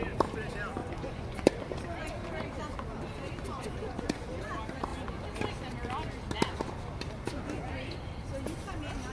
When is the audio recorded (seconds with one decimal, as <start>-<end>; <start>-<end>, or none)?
0.0-0.8; 1.5-3.4; 4.3-9.1